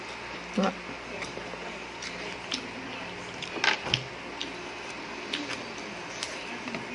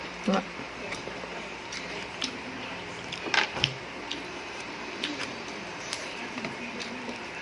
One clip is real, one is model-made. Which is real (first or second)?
first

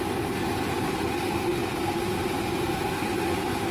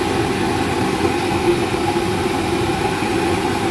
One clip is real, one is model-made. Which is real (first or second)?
second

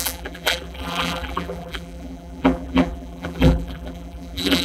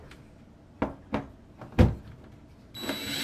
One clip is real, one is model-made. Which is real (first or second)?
second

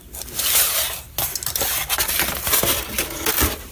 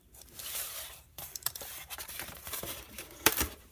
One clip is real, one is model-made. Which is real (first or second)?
first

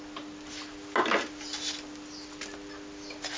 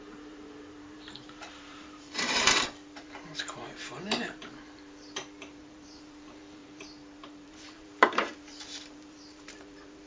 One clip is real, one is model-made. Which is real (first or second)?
first